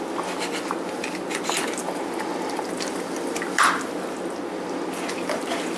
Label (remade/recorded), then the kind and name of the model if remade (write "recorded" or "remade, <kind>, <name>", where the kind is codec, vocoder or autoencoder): recorded